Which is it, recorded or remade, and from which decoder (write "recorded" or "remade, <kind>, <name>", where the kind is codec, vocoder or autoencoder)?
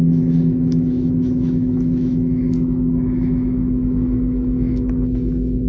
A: remade, autoencoder, DAC-VAE